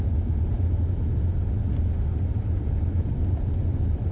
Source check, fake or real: real